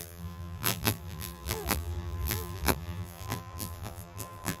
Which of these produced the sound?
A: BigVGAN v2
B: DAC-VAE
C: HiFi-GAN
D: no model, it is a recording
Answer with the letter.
A